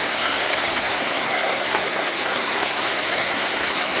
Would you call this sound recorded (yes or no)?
no